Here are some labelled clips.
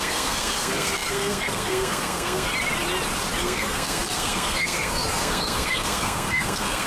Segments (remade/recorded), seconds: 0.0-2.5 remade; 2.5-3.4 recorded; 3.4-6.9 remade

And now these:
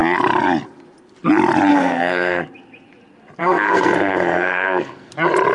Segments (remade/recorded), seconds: 0.0-1.7 recorded; 1.7-2.4 remade; 2.4-3.4 recorded; 3.4-5.1 remade; 5.1-5.5 recorded

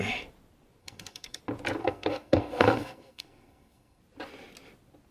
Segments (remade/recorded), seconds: 0.0-0.8 recorded; 0.8-1.4 remade; 1.4-1.8 recorded; 1.8-4.0 remade; 4.0-5.1 recorded

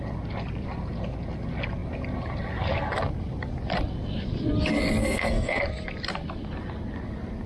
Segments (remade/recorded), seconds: 0.0-5.0 recorded; 5.0-5.6 remade; 5.6-7.5 recorded

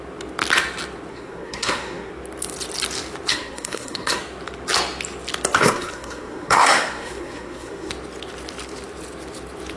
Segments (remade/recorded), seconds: 0.0-1.1 recorded; 1.1-2.1 remade; 2.1-3.3 recorded; 3.3-4.2 remade; 4.2-5.6 recorded; 5.6-7.9 remade; 7.9-9.8 recorded

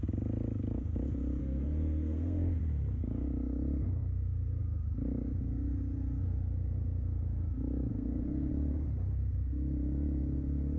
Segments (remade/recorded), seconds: 0.0-1.4 recorded; 1.4-2.6 remade; 2.6-7.9 recorded; 7.9-8.5 remade; 8.5-10.8 recorded